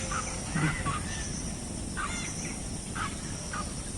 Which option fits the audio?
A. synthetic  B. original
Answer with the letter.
B